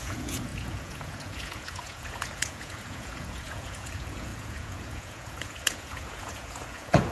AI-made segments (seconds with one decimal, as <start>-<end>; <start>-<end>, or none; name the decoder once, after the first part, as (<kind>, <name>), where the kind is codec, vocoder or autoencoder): 0.0-7.1 (vocoder, Vocos)